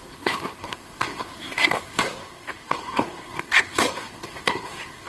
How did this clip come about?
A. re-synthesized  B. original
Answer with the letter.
A